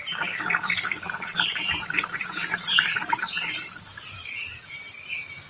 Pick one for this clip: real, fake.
fake